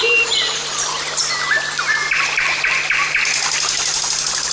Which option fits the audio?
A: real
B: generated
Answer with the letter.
A